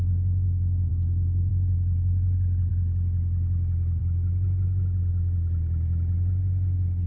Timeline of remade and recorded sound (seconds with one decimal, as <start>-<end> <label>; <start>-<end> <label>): 0.0-7.1 recorded